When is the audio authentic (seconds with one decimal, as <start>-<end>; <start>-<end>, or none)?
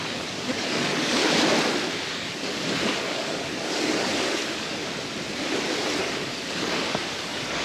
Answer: 1.2-2.1; 4.8-6.0